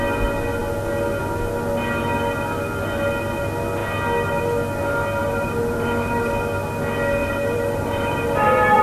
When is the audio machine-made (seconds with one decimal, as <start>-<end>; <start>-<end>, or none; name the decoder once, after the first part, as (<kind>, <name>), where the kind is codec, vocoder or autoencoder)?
5.2-6.3 (vocoder, BigVGAN v2); 7.2-8.8